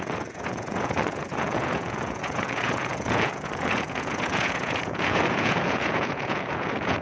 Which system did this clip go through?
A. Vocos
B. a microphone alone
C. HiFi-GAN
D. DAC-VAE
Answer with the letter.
A